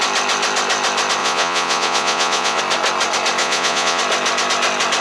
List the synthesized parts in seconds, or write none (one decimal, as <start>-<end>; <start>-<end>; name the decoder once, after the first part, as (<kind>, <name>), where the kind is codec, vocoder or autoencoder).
1.2-2.6 (vocoder, Vocos); 3.4-4.0